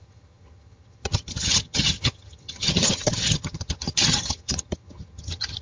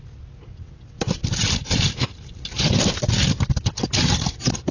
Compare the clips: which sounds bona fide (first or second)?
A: second